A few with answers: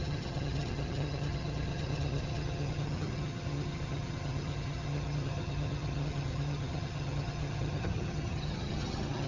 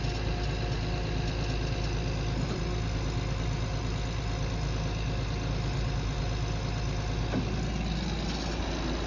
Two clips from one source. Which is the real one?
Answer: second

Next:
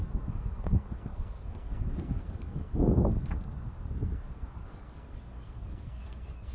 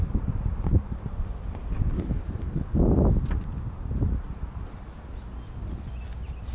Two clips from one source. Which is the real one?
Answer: second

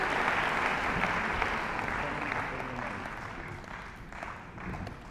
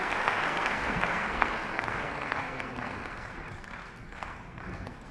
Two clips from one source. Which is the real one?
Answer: first